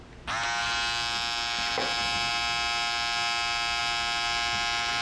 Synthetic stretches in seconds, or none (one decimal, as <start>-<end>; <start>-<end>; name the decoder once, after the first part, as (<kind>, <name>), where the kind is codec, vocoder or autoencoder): none